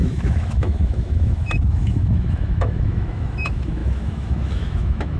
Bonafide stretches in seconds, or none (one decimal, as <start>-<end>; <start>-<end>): none